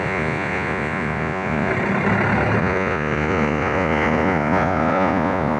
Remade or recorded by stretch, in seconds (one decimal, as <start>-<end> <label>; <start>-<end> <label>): 0.0-1.7 remade; 1.7-2.6 recorded; 2.6-5.6 remade